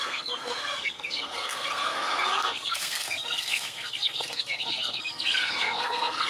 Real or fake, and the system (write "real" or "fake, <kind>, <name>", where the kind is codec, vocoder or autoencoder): fake, codec, SNAC